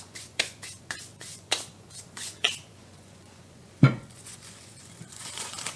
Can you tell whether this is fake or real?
fake